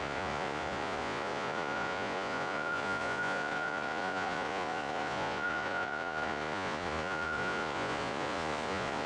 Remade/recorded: remade